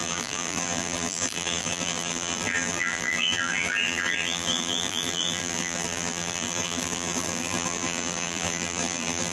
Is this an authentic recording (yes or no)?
no